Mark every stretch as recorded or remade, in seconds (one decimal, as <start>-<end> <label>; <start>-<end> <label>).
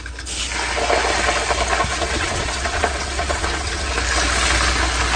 0.0-1.9 recorded; 1.9-3.9 remade; 3.9-5.2 recorded